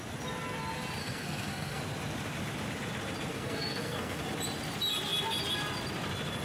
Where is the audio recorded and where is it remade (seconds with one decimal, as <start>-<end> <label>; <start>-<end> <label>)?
0.0-1.0 recorded; 1.0-1.8 remade; 1.8-3.3 recorded; 3.3-4.2 remade; 4.2-6.4 recorded